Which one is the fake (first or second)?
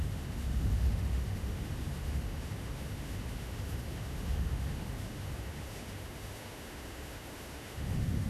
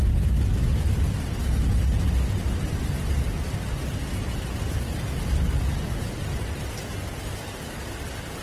first